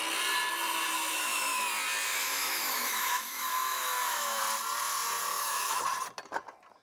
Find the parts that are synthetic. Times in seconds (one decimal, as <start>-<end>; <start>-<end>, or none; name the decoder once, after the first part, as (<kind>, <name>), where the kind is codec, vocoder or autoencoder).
1.1-1.7 (autoencoder, DAC-VAE); 2.1-4.4; 5.3-5.8